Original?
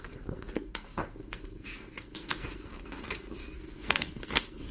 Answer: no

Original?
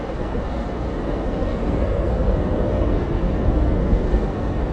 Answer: no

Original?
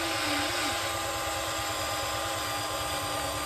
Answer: yes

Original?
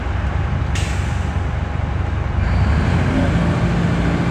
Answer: yes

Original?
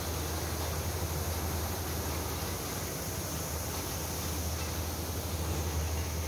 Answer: yes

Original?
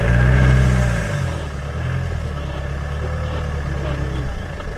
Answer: yes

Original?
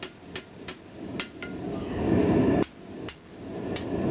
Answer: yes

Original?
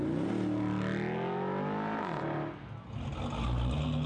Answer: yes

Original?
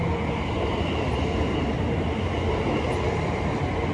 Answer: yes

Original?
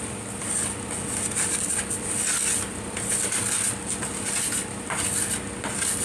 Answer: yes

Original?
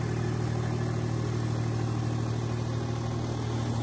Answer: yes